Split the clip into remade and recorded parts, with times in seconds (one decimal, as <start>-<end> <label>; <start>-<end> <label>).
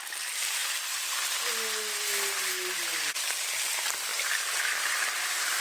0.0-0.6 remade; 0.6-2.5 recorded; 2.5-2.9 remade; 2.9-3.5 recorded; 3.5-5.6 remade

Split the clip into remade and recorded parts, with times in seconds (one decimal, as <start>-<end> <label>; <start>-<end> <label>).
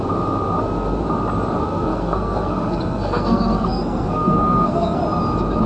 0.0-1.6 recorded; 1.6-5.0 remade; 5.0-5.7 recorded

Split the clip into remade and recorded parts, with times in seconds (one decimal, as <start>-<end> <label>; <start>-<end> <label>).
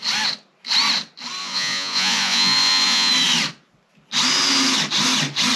0.0-1.4 recorded; 1.4-3.1 remade; 3.1-5.6 recorded